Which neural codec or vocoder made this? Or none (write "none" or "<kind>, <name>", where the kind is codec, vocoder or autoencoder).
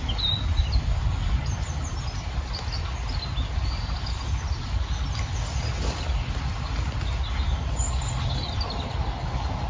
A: none